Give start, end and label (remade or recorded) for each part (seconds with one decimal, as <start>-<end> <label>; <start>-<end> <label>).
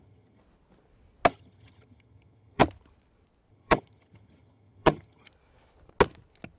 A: 0.0-0.4 remade; 0.4-1.3 recorded; 1.3-2.6 remade; 2.6-3.5 recorded; 3.5-5.3 remade; 5.3-6.6 recorded